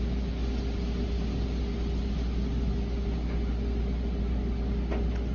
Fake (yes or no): no